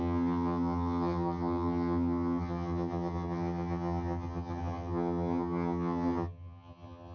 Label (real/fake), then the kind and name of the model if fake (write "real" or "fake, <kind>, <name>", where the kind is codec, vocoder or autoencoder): fake, vocoder, HiFi-GAN